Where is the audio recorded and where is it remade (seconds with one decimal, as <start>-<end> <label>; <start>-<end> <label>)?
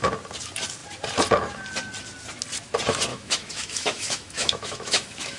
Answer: 0.0-3.1 recorded; 3.1-5.4 remade